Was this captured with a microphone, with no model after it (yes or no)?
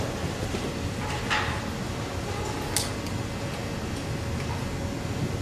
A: yes